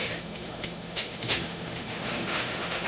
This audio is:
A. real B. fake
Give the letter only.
B